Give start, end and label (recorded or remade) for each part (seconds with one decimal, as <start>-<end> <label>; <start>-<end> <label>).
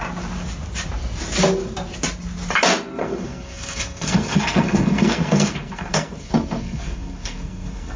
0.0-3.0 recorded; 3.0-8.0 remade